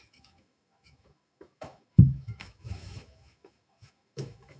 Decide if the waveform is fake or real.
fake